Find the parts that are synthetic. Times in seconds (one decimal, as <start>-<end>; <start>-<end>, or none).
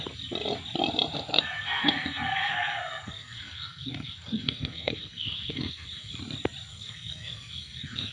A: 1.3-6.2; 6.7-8.1